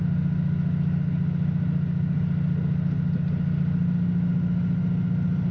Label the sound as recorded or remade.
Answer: recorded